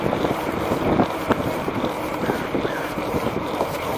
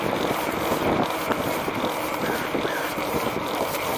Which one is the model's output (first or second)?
first